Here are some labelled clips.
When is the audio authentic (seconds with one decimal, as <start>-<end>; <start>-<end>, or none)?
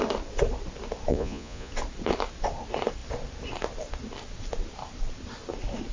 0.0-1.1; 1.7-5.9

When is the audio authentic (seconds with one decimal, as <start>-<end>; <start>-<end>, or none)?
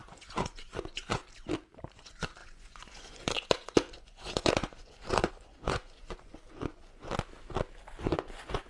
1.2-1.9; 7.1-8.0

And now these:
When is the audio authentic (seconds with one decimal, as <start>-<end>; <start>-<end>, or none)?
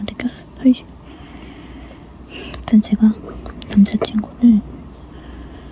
0.0-5.7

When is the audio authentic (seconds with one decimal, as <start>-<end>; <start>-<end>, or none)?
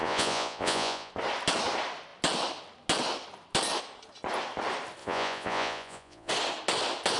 1.1-5.0; 6.3-7.2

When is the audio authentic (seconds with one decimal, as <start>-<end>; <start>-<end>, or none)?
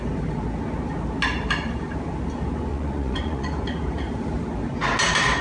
0.0-2.7; 3.5-5.4